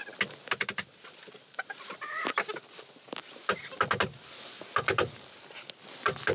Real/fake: real